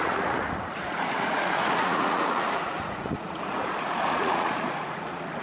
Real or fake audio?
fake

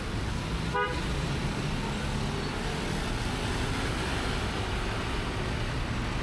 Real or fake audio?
real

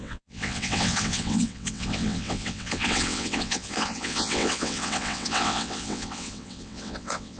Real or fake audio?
fake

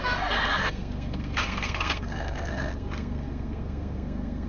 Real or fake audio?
fake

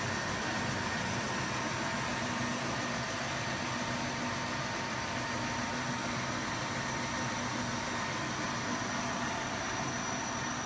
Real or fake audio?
real